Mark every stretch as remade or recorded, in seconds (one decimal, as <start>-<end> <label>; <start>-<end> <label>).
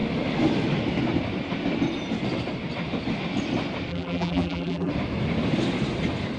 0.0-3.9 recorded; 3.9-4.9 remade; 4.9-6.4 recorded